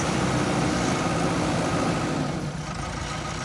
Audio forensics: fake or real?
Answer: real